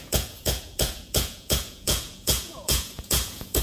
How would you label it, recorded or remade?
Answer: remade